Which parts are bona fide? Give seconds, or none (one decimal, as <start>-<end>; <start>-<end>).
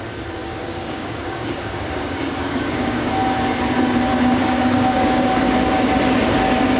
0.0-0.4; 3.1-4.1; 5.4-6.8